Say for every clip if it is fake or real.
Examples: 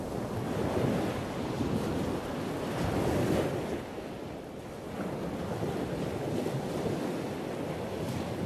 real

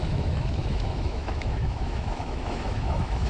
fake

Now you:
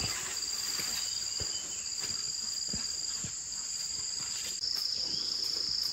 real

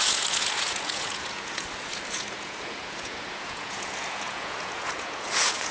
fake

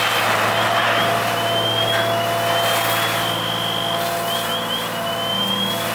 real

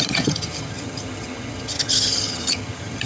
fake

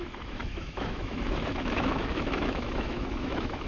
fake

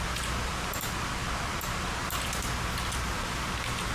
real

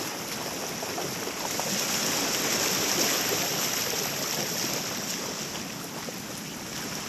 real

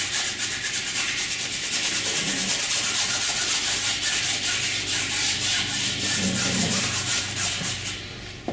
real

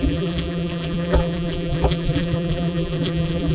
fake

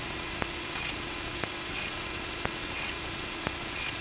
fake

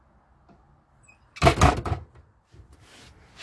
real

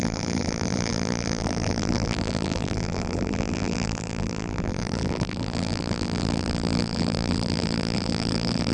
fake